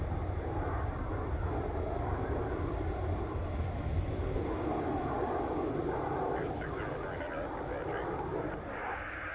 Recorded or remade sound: recorded